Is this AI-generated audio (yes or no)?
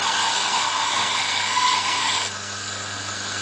yes